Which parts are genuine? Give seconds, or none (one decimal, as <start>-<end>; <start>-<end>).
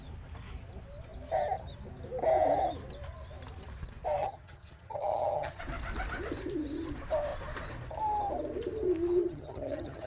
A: 0.0-4.2; 5.6-9.2